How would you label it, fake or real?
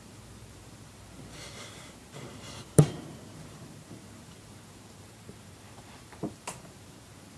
fake